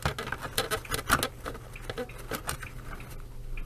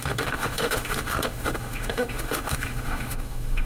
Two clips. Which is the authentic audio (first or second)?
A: first